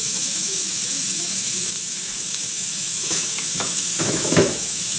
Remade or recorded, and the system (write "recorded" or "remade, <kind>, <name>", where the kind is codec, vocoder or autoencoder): remade, autoencoder, DAC-VAE